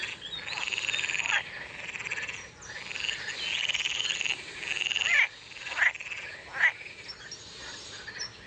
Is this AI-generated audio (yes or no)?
no